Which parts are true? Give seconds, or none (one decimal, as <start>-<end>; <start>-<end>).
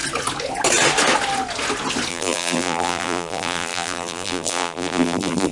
0.0-2.1